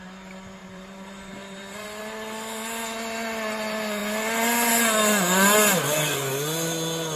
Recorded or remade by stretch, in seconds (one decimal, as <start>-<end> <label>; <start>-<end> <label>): 0.0-0.6 recorded; 0.6-2.0 remade; 2.0-7.2 recorded